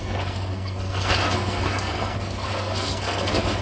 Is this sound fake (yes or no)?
yes